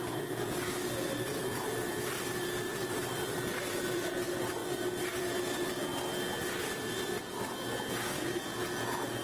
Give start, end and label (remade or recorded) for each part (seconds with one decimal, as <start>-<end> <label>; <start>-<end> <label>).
0.0-1.3 recorded; 1.3-4.1 remade; 4.1-4.6 recorded; 4.6-5.3 remade; 5.3-9.2 recorded